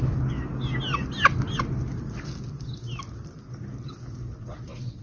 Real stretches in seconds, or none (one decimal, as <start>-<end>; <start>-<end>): 0.0-5.0